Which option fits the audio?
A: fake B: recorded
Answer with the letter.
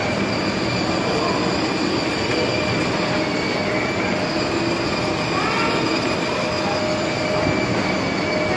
B